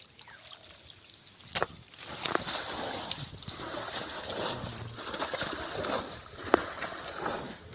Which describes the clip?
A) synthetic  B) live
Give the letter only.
B